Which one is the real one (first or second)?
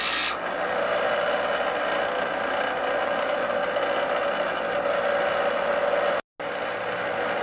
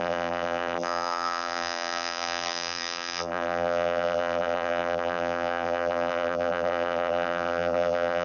first